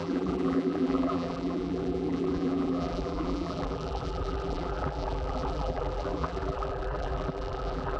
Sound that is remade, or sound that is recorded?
remade